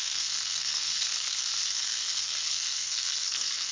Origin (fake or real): fake